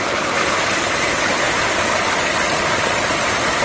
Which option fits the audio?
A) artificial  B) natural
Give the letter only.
B